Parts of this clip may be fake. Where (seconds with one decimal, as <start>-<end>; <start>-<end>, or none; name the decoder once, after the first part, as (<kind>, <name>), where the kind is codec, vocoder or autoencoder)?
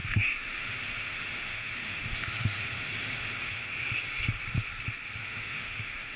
0.0-3.7 (autoencoder, DAC-VAE); 5.2-6.2